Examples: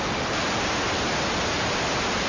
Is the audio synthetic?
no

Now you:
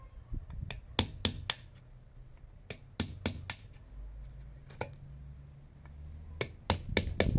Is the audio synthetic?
no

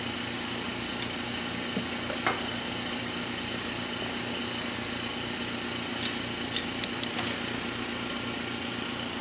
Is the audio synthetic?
no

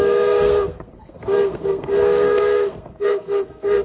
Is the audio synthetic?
yes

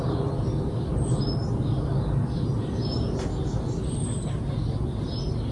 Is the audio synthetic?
no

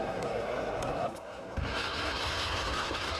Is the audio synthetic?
yes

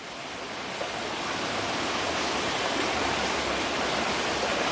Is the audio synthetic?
no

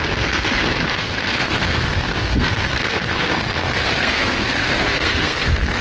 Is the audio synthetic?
yes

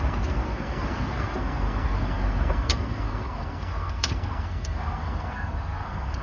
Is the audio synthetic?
yes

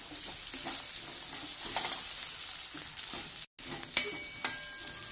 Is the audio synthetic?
no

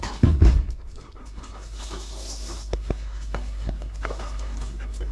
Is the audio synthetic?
yes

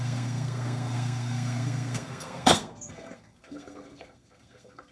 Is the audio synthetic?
yes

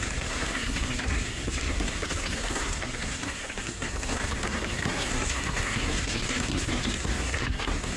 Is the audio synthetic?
yes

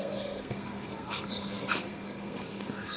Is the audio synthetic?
yes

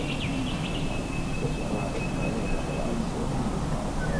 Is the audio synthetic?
no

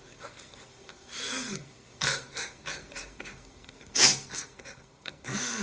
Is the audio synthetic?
yes